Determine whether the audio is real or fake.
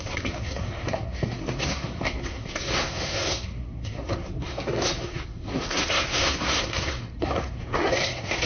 fake